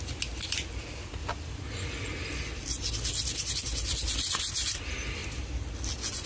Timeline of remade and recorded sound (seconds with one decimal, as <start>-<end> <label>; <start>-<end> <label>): 0.0-5.2 recorded; 5.2-5.7 remade; 5.7-6.3 recorded